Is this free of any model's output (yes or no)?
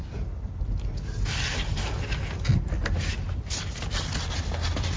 yes